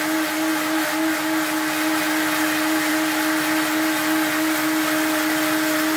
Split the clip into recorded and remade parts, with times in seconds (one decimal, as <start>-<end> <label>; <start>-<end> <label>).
0.0-6.0 recorded